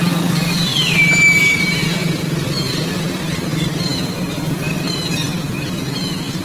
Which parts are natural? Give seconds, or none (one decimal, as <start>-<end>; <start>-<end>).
0.0-6.4